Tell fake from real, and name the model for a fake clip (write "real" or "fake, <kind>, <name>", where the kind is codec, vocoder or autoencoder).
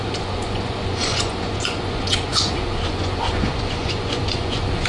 fake, vocoder, Vocos